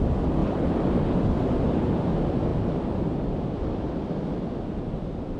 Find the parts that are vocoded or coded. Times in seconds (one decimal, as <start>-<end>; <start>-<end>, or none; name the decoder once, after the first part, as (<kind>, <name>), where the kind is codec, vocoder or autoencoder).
0.4-1.8 (vocoder, BigVGAN v2); 2.5-3.3